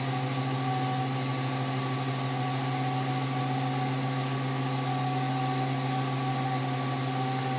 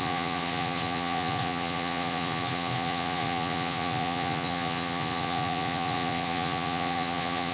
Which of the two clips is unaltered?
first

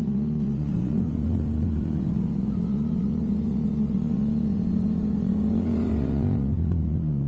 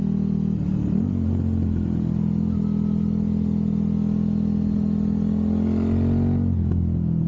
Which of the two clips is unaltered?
second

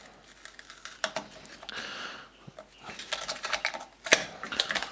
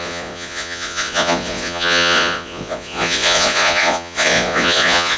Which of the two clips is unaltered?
first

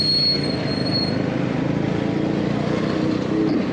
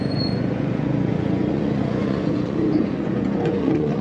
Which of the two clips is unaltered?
first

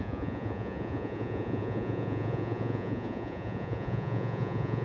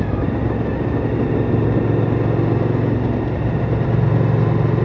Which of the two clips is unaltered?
second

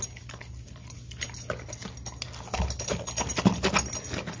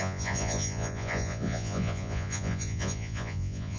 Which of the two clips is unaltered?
first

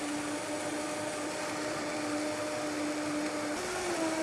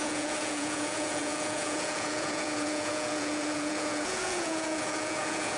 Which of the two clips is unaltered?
first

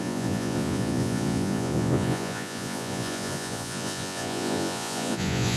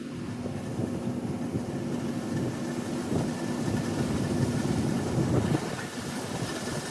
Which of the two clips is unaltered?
second